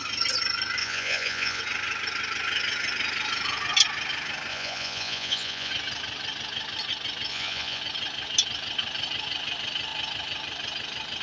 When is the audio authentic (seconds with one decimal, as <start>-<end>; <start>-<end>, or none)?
0.0-0.8; 1.6-4.5; 5.7-7.3; 7.8-11.2